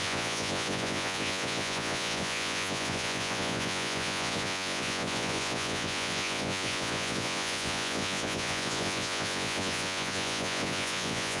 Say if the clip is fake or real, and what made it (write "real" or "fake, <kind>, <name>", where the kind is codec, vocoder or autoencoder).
fake, vocoder, Vocos